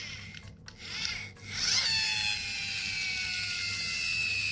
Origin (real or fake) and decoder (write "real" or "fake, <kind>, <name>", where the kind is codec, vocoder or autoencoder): real